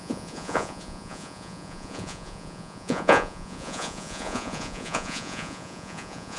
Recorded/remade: remade